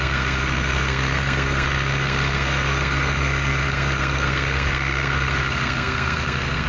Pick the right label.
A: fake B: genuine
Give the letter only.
A